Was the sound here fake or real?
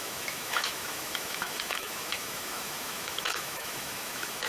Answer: fake